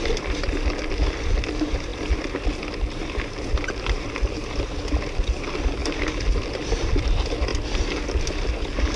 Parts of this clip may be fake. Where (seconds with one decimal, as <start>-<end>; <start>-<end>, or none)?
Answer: none